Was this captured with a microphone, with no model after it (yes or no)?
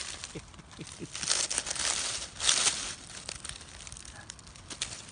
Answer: yes